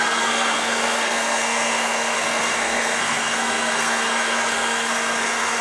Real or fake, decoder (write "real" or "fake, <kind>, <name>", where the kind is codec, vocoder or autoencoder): fake, codec, SNAC